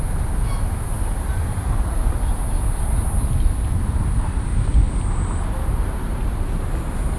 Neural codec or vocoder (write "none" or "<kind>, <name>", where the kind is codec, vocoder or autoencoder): none